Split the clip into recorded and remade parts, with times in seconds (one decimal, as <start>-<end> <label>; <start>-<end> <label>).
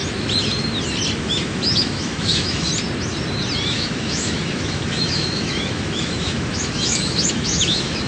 0.0-1.2 recorded; 1.2-2.7 remade; 2.7-3.7 recorded; 3.7-8.1 remade